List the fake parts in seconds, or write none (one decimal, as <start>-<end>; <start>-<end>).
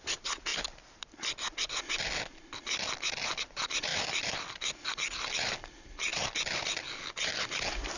0.0-0.5; 3.4-3.9; 5.6-6.1; 7.4-8.0